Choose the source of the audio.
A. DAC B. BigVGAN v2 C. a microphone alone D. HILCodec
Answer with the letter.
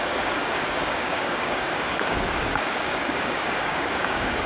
A